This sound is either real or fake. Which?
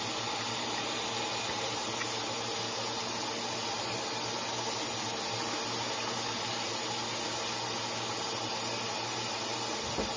real